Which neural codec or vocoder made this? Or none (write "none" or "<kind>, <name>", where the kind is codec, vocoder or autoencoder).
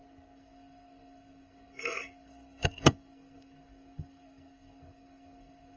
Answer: codec, SNAC